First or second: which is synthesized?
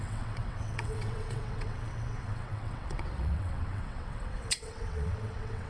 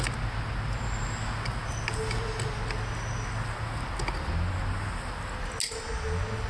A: first